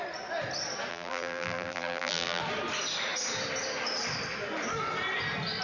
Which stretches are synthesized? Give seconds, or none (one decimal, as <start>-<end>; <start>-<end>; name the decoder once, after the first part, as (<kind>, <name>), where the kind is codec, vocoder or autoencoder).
0.9-2.4 (vocoder, BigVGAN v2)